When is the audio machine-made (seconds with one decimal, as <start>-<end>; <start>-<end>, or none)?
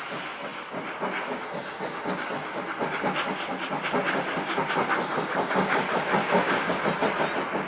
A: 6.2-6.8